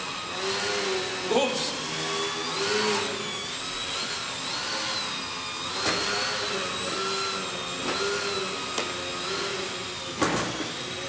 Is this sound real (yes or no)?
yes